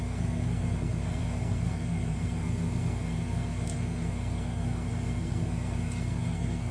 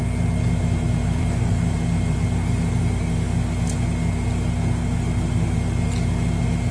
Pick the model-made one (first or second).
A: first